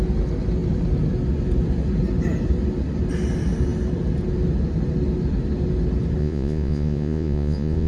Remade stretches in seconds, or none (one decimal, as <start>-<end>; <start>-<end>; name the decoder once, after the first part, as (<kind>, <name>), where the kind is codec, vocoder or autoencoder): 6.2-7.9 (vocoder, Vocos)